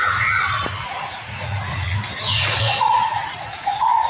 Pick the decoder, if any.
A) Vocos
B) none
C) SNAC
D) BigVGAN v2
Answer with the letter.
A